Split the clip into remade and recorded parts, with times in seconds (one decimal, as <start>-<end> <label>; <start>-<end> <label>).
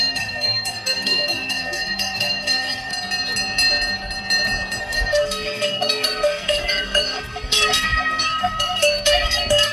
0.0-2.9 remade; 2.9-4.8 recorded; 4.8-9.7 remade